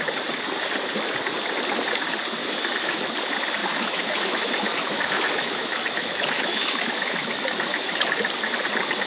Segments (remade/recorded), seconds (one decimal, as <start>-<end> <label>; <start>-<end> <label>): 0.0-2.4 recorded; 2.4-3.0 remade; 3.0-3.6 recorded; 3.6-8.3 remade; 8.3-9.1 recorded